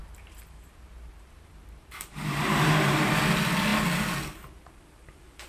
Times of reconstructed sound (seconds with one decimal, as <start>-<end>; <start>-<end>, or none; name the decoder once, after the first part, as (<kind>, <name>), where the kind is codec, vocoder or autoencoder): 0.0-3.1 (vocoder, BigVGAN v2)